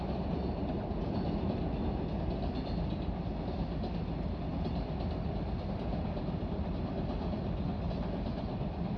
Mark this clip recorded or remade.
recorded